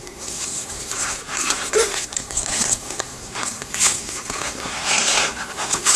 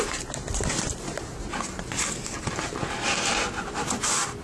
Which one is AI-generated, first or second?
first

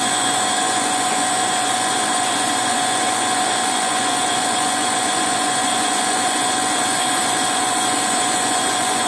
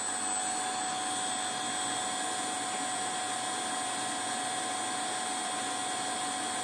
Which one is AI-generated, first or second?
first